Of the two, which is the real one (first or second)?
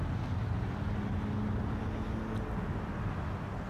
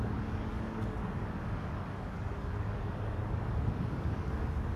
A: first